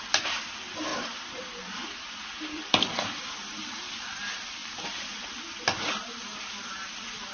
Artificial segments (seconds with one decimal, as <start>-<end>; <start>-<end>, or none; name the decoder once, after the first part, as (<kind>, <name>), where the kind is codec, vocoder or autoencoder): 0.9-3.3 (vocoder, BigVGAN v2); 6.3-7.3